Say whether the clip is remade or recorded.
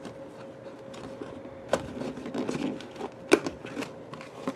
recorded